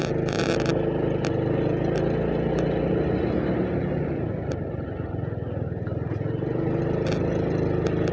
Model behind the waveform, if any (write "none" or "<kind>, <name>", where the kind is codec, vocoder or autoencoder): none